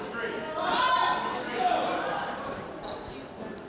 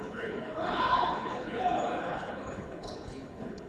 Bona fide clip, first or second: first